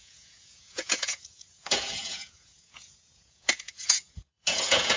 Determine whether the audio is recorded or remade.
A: remade